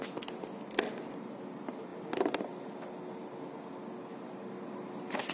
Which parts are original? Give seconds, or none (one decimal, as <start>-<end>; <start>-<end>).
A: 0.0-5.3